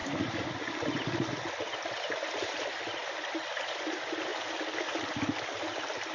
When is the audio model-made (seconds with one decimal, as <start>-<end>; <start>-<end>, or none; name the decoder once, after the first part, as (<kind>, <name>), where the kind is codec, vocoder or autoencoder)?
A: none